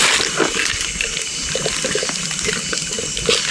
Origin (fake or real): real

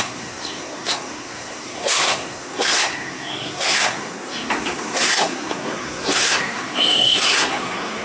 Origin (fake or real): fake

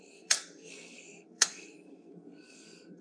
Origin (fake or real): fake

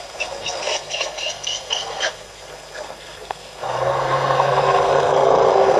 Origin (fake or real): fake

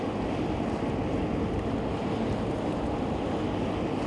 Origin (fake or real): real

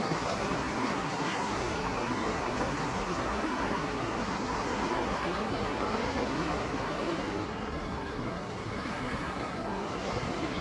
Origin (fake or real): fake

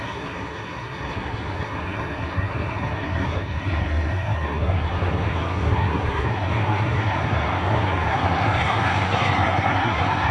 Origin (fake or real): fake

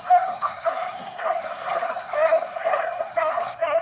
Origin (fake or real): fake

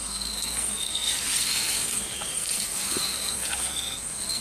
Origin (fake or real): fake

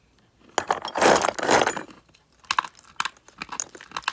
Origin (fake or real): real